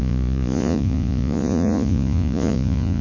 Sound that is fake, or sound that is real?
fake